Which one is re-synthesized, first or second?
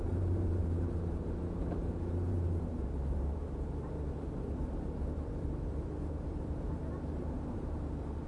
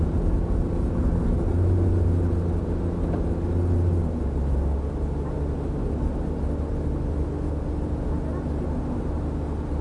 first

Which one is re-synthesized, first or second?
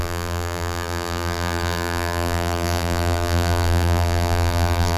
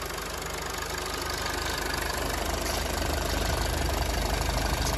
first